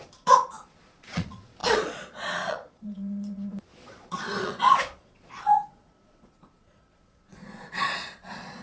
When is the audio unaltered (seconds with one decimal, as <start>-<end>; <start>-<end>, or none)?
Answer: none